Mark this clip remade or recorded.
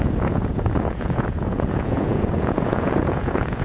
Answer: remade